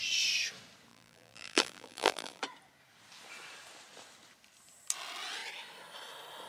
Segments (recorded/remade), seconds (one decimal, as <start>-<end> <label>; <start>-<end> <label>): 0.0-0.9 recorded; 0.9-2.4 remade; 2.4-6.5 recorded